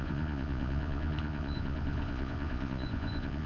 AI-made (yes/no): yes